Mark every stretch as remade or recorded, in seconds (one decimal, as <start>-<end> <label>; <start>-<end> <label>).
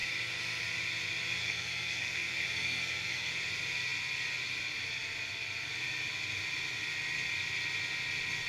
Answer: 0.0-1.4 recorded; 1.4-3.3 remade; 3.3-8.5 recorded